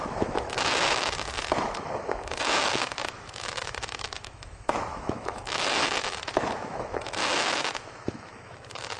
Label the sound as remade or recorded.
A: remade